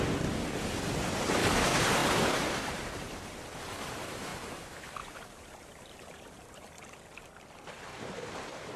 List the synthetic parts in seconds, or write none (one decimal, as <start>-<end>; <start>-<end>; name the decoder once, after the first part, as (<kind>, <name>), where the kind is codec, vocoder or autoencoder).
2.0-3.6 (vocoder, BigVGAN v2); 4.3-6.7